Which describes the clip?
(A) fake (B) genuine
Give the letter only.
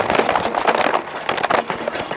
B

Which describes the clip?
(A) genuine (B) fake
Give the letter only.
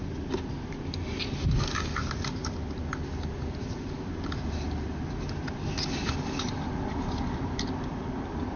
A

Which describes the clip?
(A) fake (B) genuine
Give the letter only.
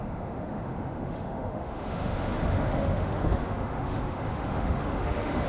A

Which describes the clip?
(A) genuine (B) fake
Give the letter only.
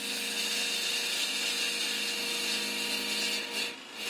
A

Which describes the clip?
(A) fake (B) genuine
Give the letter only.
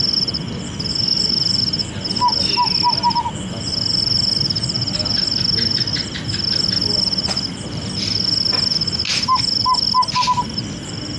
B